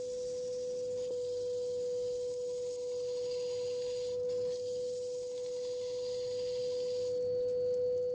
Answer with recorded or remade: recorded